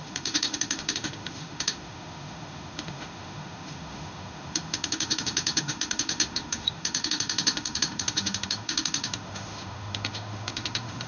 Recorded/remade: remade